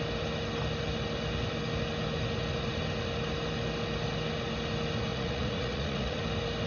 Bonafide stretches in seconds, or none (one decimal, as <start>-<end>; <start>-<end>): 0.0-5.1; 6.2-6.7